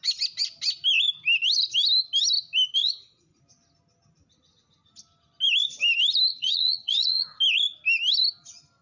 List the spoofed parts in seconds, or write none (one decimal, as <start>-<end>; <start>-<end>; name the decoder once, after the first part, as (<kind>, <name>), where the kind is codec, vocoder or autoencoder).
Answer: 2.8-3.4 (vocoder, Vocos); 6.3-7.4